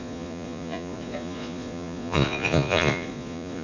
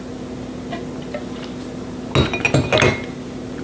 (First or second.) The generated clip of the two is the first